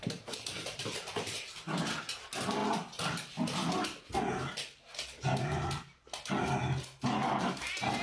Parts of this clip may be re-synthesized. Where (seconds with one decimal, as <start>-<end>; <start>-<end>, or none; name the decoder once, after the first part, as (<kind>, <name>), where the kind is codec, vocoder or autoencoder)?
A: 0.0-2.6 (vocoder, BigVGAN v2); 7.4-8.0